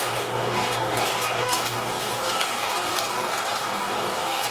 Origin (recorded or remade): remade